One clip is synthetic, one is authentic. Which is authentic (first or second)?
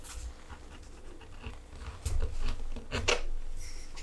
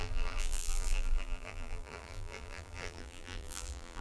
first